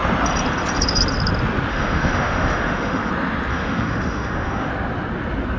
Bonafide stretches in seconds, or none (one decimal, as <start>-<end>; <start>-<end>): 0.0-1.7; 3.1-3.5; 4.7-5.6